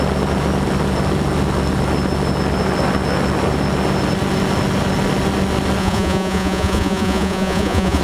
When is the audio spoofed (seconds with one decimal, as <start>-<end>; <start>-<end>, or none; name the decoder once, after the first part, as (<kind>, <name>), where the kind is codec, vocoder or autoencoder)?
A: 5.8-8.0 (vocoder, Vocos)